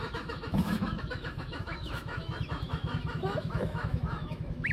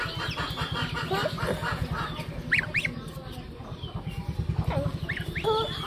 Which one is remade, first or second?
first